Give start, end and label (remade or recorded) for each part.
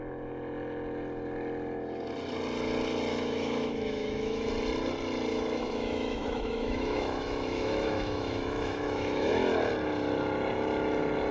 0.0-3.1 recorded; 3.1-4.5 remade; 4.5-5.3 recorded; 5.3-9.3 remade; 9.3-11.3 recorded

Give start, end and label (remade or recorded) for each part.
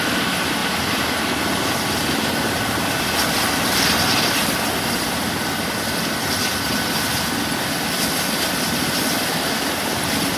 0.0-10.4 recorded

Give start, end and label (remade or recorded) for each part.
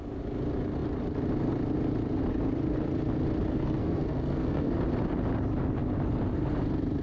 0.0-3.5 recorded; 3.5-4.7 remade; 4.7-7.0 recorded